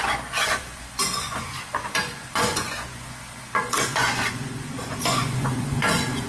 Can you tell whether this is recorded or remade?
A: remade